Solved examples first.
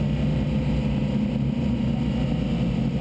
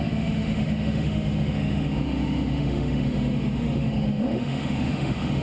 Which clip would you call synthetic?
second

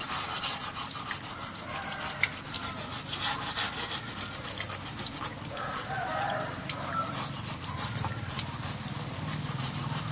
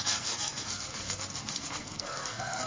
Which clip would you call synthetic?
second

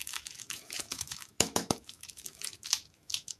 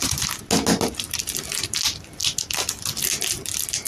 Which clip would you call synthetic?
first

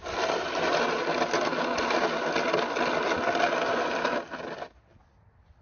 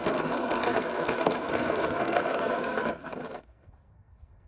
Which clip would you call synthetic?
second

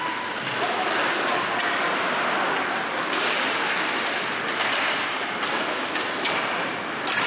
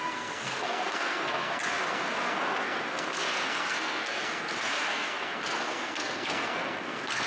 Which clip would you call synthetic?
second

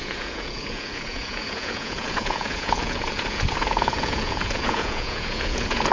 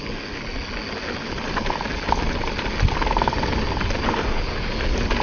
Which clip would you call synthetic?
first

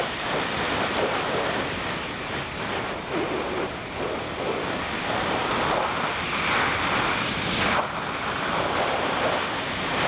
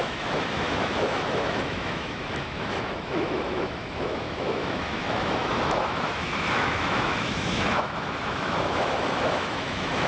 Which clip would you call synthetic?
second